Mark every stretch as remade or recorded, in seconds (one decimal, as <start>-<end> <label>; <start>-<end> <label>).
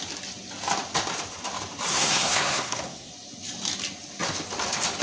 0.0-1.9 recorded; 1.9-3.1 remade; 3.1-5.0 recorded